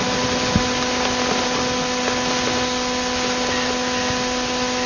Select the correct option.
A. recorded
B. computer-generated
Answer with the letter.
A